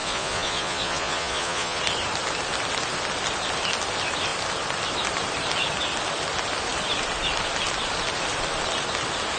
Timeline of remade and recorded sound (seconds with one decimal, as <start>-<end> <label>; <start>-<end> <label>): 0.0-1.8 remade; 1.8-9.4 recorded